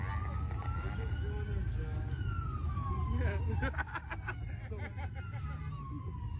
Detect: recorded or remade recorded